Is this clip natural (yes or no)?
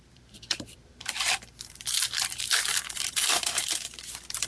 no